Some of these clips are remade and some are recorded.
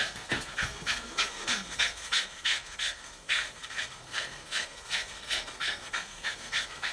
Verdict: remade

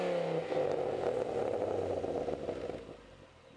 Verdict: recorded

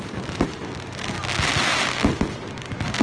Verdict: recorded